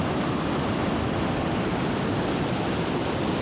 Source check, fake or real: real